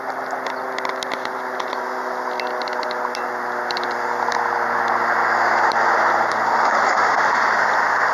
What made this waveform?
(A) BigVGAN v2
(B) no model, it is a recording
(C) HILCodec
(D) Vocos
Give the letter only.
B